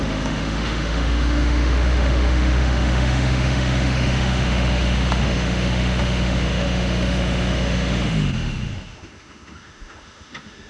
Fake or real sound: fake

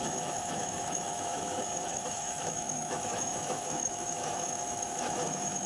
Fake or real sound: fake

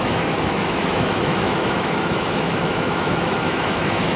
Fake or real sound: fake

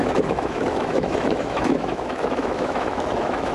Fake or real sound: fake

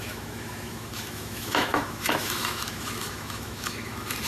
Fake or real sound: fake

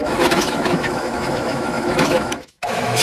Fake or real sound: fake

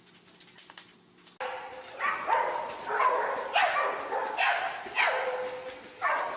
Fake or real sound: real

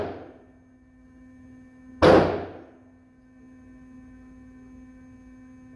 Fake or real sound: real